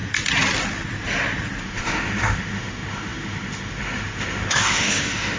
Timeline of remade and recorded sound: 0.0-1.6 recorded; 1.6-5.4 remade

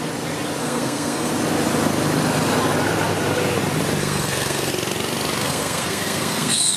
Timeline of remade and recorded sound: 0.0-0.6 recorded; 0.6-1.3 remade; 1.3-4.0 recorded; 4.0-4.7 remade; 4.7-5.4 recorded; 5.4-6.8 remade